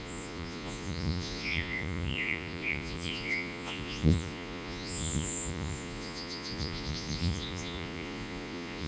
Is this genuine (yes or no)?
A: no